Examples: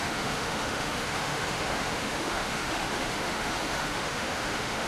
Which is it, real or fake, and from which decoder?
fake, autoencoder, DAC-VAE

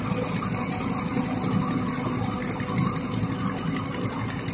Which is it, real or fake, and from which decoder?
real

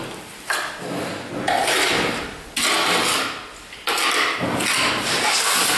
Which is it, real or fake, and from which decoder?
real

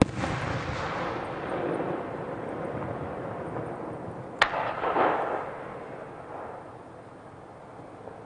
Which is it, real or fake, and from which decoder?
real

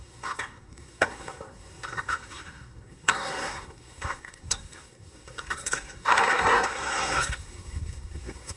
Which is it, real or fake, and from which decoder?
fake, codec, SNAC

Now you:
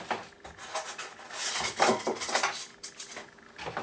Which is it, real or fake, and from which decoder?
real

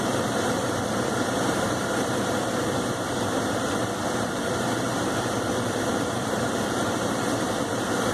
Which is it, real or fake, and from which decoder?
fake, vocoder, BigVGAN v2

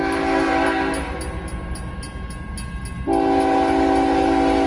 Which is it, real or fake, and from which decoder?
real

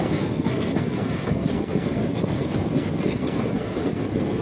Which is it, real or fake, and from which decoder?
fake, codec, SNAC